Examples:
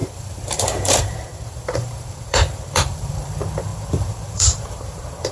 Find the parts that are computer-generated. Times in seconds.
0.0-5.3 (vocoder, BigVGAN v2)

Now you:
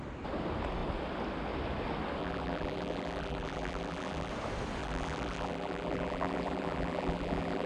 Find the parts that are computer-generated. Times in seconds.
2.2-4.3 (vocoder, BigVGAN v2); 4.8-7.7

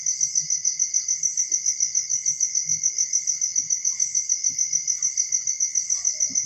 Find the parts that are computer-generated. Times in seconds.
none

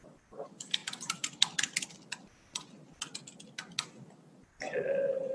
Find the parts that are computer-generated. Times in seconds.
0.8-1.4 (vocoder, BigVGAN v2)

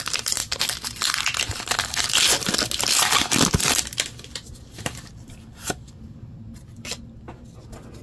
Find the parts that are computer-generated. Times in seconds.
none